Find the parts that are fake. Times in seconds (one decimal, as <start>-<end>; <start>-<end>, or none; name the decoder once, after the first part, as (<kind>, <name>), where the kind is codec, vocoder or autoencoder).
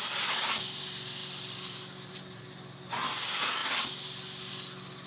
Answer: none